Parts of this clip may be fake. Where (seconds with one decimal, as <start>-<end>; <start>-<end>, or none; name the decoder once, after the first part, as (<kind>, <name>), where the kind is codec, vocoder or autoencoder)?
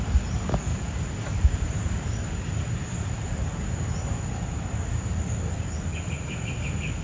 0.7-4.9 (vocoder, BigVGAN v2)